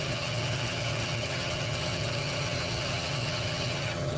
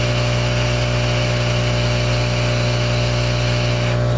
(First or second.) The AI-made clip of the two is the first